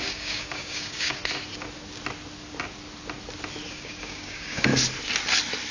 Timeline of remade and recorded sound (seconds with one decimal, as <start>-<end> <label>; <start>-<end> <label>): 0.0-1.2 remade; 1.2-3.7 recorded; 3.7-4.7 remade; 4.7-5.7 recorded